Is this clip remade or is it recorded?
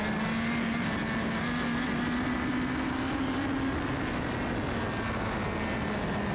recorded